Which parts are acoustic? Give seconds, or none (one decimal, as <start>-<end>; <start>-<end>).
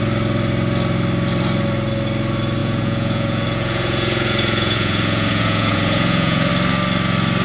0.0-2.6; 6.5-7.4